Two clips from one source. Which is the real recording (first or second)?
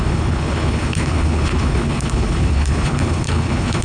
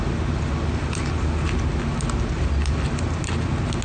second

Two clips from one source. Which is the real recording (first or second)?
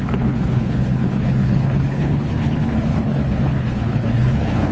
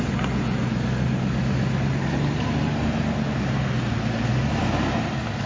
second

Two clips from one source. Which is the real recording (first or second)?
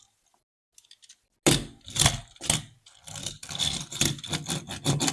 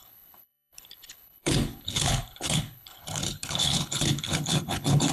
first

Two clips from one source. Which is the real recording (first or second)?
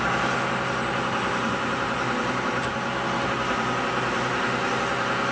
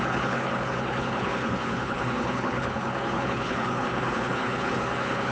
first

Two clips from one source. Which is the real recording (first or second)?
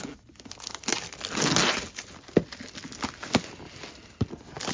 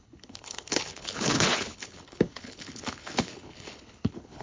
first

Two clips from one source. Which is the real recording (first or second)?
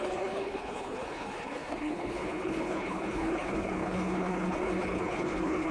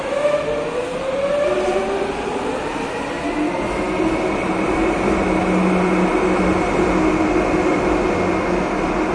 second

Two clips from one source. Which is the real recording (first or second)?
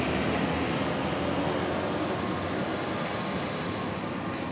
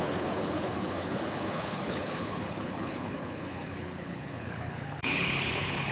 first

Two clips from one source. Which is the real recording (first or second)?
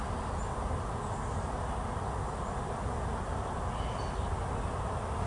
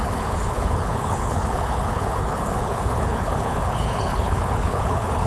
first